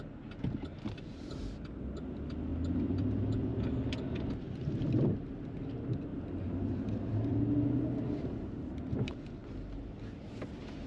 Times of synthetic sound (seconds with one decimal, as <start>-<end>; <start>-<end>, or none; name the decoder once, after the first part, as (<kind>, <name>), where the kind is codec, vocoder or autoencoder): 2.5-5.3 (vocoder, BigVGAN v2); 6.1-7.4